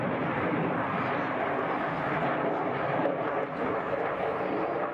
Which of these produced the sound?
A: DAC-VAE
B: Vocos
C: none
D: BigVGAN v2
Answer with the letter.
C